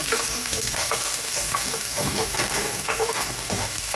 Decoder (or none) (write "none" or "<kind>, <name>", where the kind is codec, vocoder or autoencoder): codec, DAC